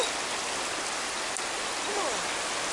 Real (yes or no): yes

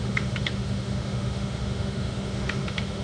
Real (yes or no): no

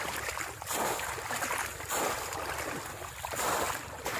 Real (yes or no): yes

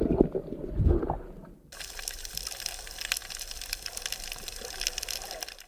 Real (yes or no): yes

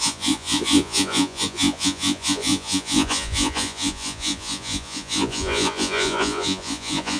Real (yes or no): no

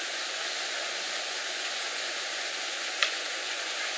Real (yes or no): no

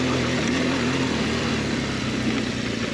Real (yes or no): yes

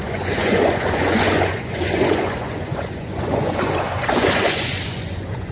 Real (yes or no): no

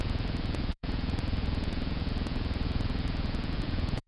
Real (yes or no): no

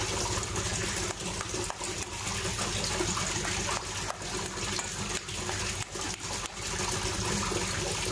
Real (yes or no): yes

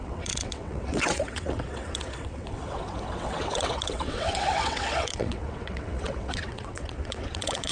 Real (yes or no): no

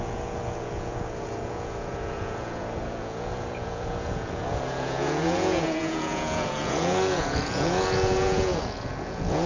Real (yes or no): no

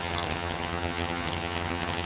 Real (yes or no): no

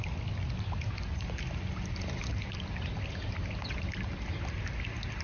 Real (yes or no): yes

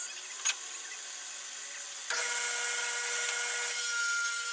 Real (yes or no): yes